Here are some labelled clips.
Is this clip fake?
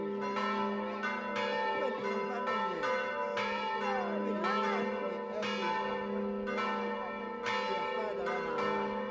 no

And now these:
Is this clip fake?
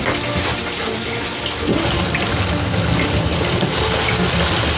no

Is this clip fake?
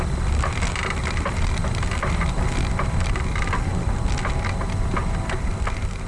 no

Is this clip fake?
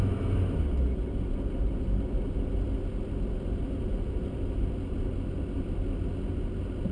no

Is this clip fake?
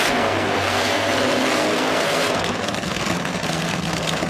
yes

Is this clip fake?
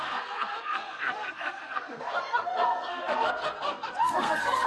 yes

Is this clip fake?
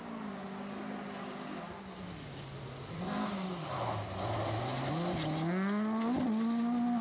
no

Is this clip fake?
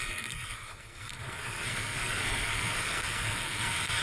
yes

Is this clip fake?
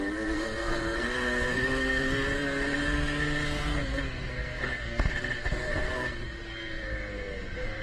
yes